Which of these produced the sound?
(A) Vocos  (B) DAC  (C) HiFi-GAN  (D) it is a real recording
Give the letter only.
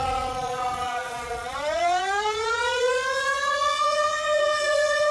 A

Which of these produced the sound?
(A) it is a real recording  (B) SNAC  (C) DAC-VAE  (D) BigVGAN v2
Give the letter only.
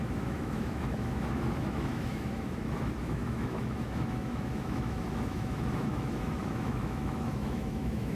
C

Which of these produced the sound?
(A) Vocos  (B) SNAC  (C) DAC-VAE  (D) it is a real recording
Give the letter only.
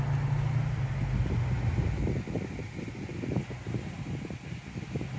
D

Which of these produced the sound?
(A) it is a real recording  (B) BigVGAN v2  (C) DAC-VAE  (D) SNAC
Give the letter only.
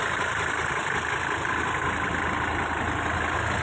A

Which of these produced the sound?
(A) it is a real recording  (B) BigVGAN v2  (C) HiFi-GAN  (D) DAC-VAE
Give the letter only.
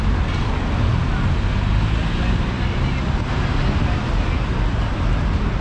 A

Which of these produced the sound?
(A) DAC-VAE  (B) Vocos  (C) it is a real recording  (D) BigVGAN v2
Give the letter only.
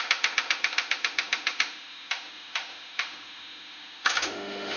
A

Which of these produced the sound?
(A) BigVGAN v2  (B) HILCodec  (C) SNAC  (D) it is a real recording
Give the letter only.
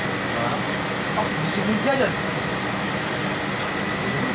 D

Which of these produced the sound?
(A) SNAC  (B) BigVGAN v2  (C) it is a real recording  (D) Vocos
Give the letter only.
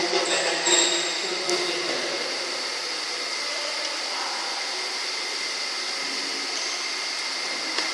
C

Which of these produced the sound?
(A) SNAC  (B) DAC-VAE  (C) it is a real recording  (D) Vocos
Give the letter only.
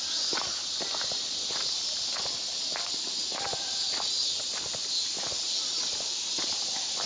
C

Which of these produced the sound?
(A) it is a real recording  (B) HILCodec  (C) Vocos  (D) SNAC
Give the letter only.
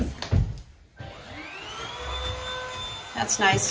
A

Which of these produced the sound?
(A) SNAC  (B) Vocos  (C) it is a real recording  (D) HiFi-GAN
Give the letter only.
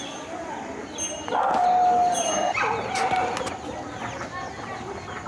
C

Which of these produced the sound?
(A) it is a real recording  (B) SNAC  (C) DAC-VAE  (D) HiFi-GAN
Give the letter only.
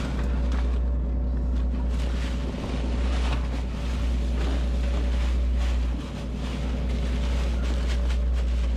A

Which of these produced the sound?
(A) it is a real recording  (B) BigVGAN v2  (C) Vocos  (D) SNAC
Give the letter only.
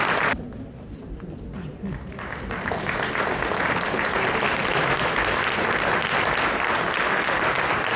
A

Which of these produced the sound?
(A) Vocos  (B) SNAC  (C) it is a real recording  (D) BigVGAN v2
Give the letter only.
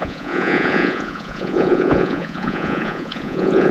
A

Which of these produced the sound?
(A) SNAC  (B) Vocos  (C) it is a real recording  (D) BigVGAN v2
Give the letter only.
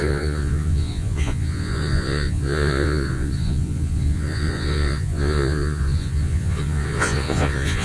B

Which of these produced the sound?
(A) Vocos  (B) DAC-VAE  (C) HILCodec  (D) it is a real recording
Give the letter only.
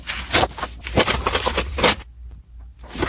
D